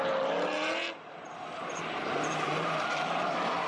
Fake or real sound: real